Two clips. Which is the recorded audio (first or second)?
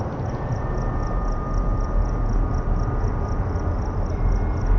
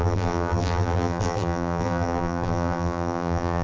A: first